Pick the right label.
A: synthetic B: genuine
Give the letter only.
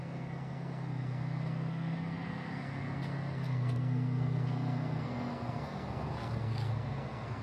A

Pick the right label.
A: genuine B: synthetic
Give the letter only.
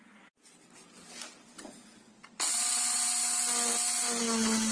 A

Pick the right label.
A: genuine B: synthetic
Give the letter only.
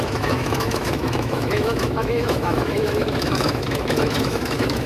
B